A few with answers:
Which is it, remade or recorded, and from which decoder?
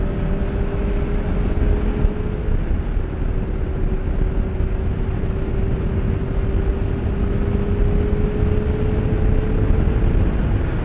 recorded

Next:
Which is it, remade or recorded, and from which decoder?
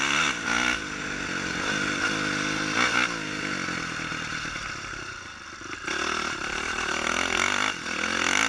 recorded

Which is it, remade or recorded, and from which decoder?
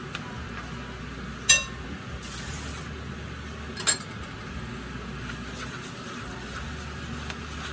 recorded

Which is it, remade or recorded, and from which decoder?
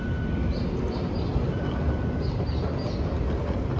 recorded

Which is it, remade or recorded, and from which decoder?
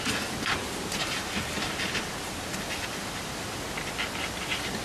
recorded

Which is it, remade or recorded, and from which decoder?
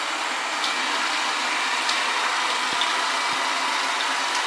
recorded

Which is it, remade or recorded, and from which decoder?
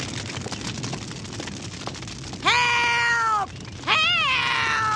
recorded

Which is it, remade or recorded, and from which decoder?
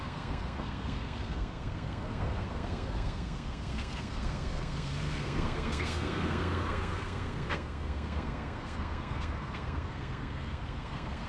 remade, codec, SNAC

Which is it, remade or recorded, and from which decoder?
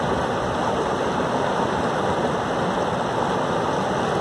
recorded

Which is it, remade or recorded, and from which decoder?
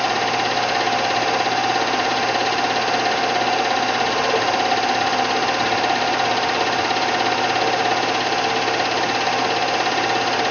recorded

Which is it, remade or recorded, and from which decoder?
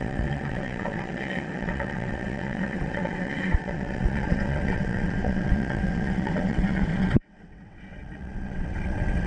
remade, vocoder, WaveNeXt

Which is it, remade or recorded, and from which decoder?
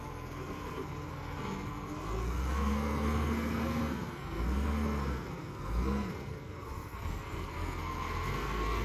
remade, codec, SNAC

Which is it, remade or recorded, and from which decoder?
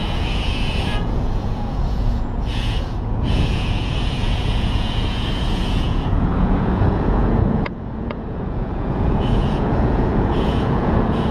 remade, vocoder, Vocos